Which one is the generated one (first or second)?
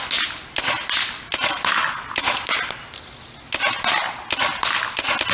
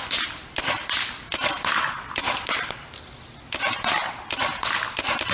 second